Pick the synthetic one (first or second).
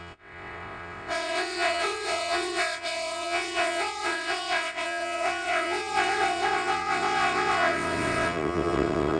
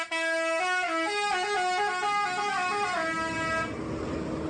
first